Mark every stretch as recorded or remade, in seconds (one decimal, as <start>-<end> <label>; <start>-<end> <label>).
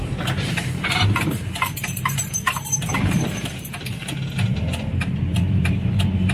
0.0-4.0 remade; 4.0-4.9 recorded; 4.9-6.3 remade